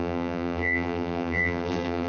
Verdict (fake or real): fake